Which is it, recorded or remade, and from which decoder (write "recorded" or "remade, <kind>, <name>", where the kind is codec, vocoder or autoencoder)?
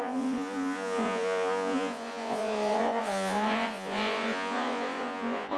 remade, vocoder, Vocos